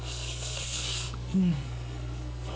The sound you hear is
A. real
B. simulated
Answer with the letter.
B